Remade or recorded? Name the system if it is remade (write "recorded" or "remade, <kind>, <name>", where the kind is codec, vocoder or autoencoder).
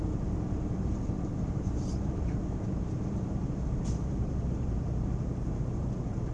remade, vocoder, BigVGAN v2